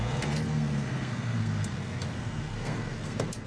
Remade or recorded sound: remade